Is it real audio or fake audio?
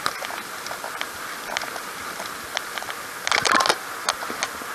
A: real